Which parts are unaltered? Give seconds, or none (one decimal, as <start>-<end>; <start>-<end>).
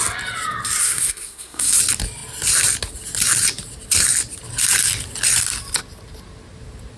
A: 0.0-0.8; 1.8-7.0